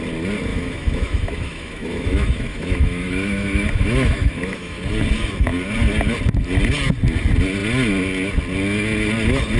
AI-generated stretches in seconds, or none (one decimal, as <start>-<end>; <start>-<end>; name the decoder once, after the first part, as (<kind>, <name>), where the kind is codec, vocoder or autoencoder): 0.5-4.8 (autoencoder, DAC-VAE)